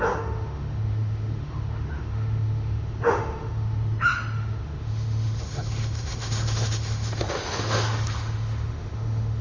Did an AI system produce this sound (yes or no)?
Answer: yes